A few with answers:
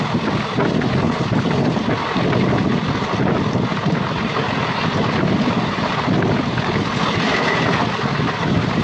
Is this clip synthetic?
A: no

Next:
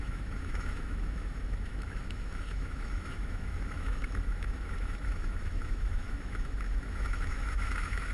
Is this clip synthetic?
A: yes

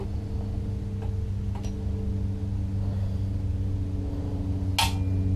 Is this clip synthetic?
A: no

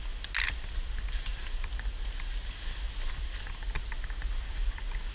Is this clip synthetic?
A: no